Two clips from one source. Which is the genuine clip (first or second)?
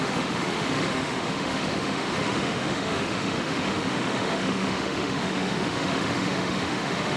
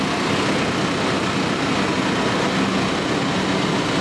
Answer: second